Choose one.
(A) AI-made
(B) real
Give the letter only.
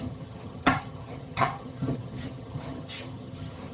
A